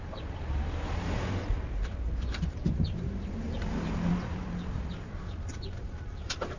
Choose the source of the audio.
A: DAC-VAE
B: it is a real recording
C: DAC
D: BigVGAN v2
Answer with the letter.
D